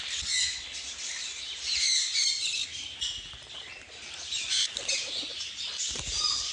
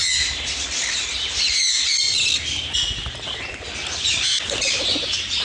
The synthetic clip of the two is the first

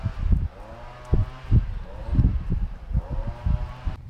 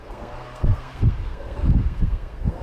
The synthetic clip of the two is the second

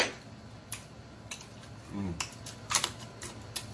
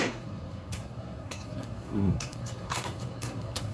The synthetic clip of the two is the second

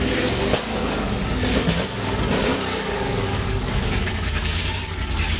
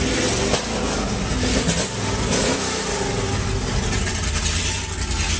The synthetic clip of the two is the first